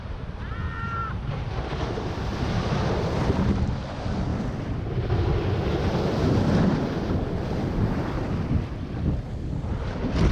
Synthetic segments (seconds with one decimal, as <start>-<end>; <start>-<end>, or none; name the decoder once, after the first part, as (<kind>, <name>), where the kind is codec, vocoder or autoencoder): none